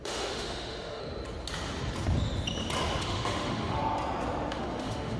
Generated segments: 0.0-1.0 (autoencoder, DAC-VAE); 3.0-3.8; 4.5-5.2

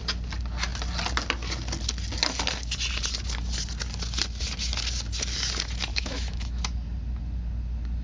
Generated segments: 5.9-6.6 (autoencoder, DAC-VAE)

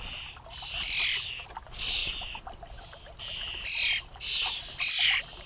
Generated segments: none

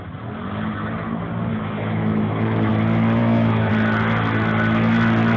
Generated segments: 1.5-2.7 (autoencoder, DAC-VAE); 3.2-3.7

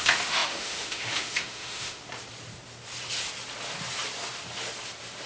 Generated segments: 0.0-2.0 (autoencoder, DAC-VAE)

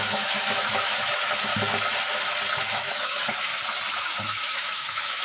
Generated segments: 0.0-1.5 (autoencoder, DAC-VAE); 2.7-3.5; 4.0-5.2

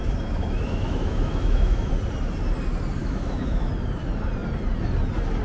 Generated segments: 0.0-1.9 (autoencoder, DAC-VAE); 3.0-3.7

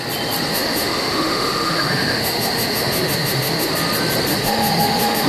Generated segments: 0.5-3.7 (autoencoder, DAC-VAE); 4.3-5.3